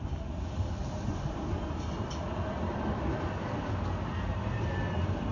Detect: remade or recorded recorded